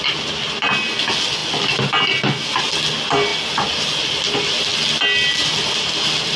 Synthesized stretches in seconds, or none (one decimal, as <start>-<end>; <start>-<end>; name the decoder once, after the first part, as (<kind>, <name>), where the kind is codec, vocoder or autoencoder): none

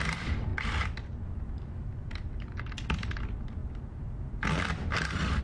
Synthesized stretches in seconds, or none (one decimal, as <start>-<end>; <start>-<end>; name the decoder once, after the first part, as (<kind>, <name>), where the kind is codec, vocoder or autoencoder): 0.0-0.5 (vocoder, BigVGAN v2); 1.4-5.4